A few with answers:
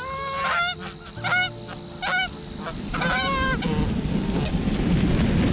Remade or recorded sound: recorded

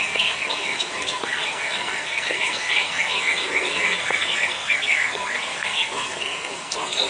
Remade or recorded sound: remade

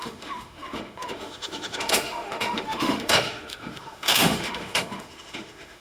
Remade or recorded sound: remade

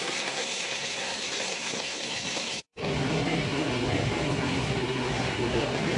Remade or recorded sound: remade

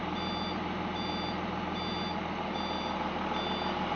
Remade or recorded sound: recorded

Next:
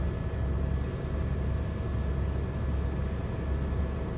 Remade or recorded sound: recorded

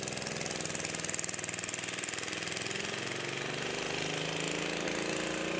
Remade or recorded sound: recorded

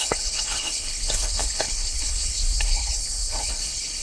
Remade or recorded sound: remade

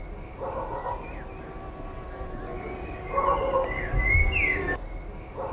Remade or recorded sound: recorded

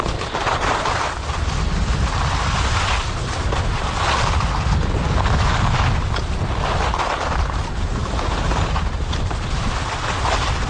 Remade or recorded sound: recorded